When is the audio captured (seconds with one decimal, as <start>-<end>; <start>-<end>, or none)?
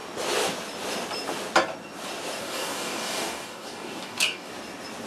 0.0-2.4; 4.5-5.1